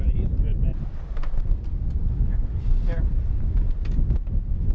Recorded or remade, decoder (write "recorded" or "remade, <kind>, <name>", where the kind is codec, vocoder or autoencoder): recorded